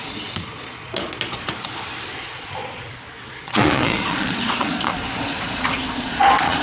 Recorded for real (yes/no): no